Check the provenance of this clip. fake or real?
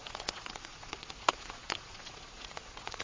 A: fake